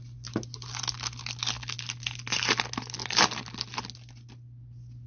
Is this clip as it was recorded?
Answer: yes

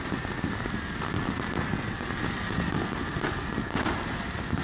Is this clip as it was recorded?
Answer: yes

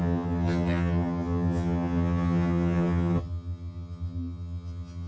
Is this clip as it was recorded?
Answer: no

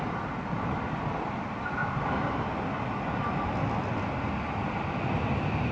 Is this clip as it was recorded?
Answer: yes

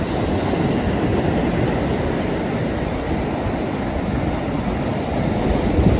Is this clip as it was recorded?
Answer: yes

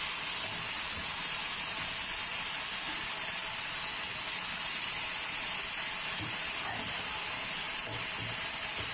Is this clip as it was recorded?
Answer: yes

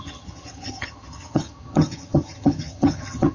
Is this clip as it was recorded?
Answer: no